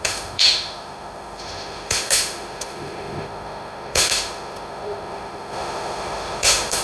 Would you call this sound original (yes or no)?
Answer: no